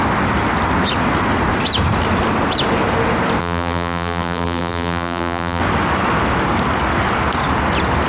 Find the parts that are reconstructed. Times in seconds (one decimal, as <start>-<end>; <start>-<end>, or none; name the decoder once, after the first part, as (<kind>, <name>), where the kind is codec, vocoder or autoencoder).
3.4-5.6 (vocoder, BigVGAN v2)